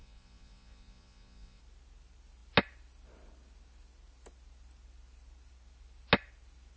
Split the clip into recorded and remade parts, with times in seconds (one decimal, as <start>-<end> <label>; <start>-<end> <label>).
0.0-1.6 remade; 1.6-6.8 recorded